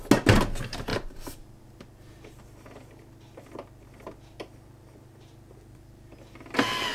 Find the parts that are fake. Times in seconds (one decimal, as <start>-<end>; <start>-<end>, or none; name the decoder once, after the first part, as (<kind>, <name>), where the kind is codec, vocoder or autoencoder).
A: 0.9-1.4 (vocoder, BigVGAN v2)